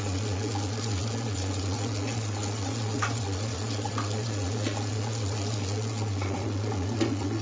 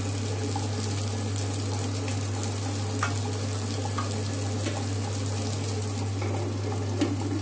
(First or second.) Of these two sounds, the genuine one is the second